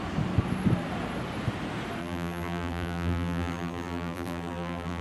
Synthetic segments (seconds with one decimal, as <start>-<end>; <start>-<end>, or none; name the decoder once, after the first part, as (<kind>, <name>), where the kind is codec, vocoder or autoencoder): 2.0-5.0 (vocoder, BigVGAN v2)